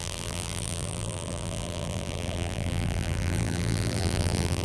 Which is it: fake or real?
fake